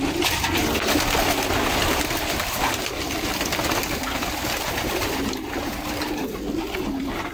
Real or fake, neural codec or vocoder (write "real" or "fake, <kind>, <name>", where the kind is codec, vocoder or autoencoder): real